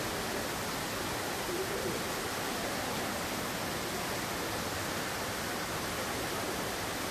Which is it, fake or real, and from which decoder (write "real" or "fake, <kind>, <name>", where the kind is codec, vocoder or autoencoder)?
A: real